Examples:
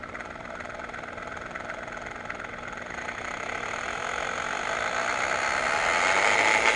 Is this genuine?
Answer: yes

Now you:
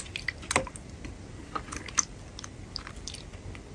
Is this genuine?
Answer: yes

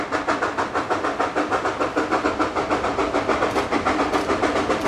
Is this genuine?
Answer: yes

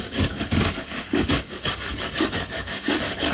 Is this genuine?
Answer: no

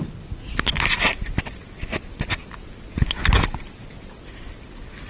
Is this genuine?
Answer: yes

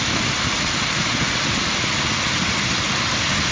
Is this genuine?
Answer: yes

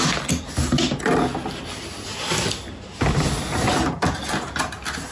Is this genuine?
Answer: yes